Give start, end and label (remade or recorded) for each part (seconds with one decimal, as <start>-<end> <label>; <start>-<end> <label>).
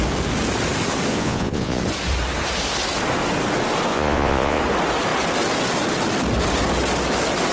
0.0-1.1 recorded; 1.1-1.8 remade; 1.8-3.9 recorded; 3.9-4.6 remade; 4.6-7.5 recorded